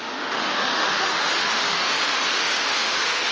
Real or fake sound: fake